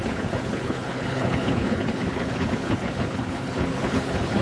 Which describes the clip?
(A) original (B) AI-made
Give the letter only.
B